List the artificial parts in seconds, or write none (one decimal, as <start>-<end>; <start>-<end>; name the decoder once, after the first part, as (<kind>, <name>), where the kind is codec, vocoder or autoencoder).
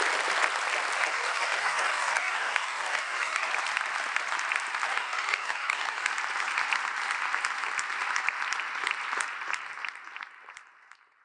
1.1-3.5 (codec, DAC); 4.9-6.1